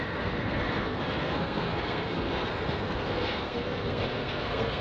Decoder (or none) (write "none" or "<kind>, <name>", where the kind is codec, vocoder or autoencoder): codec, SNAC